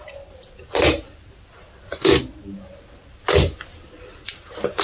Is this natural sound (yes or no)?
no